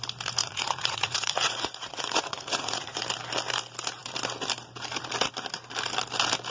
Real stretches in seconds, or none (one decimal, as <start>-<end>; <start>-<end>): 0.0-0.4; 3.0-6.5